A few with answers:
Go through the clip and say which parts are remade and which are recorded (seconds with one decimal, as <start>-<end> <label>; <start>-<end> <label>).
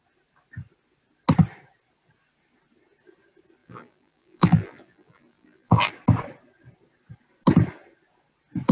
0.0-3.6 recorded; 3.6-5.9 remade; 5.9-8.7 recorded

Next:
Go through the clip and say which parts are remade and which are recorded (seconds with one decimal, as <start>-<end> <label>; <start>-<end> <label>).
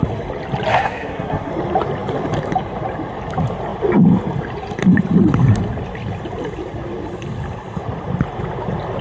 0.0-0.7 recorded; 0.7-1.5 remade; 1.5-9.0 recorded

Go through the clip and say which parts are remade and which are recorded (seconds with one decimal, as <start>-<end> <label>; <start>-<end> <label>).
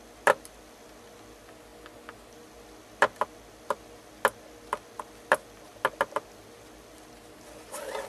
0.0-8.1 recorded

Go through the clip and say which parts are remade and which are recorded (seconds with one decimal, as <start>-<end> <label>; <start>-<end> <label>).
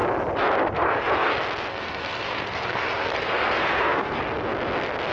0.0-1.7 recorded; 1.7-4.2 remade; 4.2-5.1 recorded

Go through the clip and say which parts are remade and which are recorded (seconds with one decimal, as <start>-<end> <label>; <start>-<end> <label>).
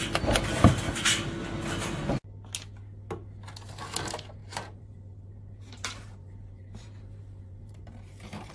0.0-4.4 recorded; 4.4-8.5 remade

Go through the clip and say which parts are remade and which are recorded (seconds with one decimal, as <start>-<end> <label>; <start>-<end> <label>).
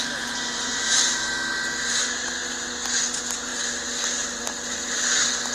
0.0-0.7 recorded; 0.7-1.3 remade; 1.3-5.5 recorded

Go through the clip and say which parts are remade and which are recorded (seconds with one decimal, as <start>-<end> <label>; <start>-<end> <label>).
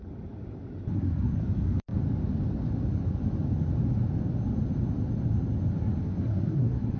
0.0-0.9 recorded; 0.9-1.4 remade; 1.4-6.0 recorded; 6.0-7.0 remade